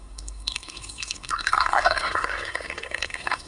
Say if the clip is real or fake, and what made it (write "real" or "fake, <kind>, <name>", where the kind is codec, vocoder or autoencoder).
fake, codec, SNAC